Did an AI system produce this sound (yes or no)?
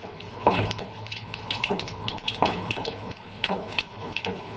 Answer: yes